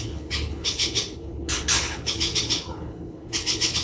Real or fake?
fake